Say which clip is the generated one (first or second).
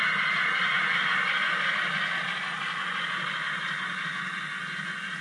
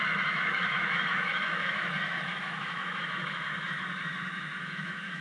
second